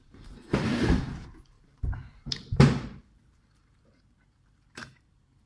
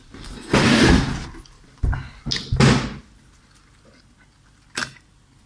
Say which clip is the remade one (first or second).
first